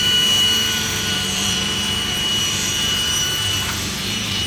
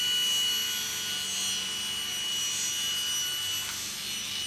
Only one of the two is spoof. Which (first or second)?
first